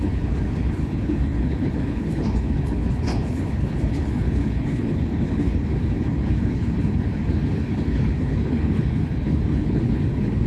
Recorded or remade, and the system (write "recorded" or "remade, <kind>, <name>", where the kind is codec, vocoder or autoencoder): remade, codec, HILCodec